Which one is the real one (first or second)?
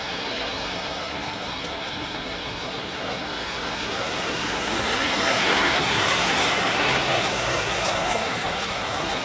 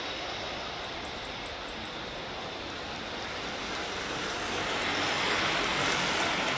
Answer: second